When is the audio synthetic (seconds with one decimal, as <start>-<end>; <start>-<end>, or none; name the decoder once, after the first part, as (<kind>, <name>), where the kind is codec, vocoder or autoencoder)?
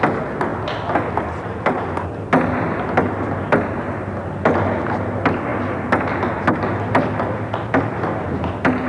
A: none